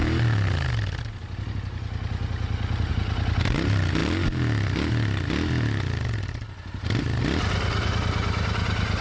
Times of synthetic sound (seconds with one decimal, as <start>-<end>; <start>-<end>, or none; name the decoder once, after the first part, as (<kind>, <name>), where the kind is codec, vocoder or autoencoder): none